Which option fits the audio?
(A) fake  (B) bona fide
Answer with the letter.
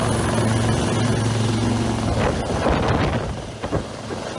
B